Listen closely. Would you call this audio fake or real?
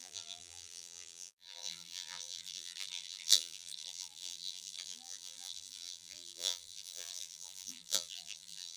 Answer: fake